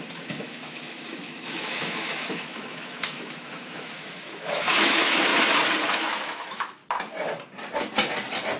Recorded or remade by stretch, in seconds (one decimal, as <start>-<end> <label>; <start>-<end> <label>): 0.0-5.3 remade; 5.3-5.9 recorded; 5.9-6.8 remade; 6.8-8.6 recorded